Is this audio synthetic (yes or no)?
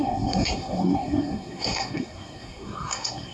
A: yes